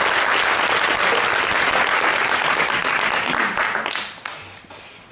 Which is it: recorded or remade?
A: recorded